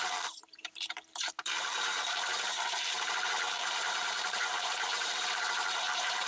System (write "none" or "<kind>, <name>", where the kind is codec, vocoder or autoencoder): vocoder, BigVGAN v2